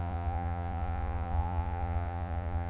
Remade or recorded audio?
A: remade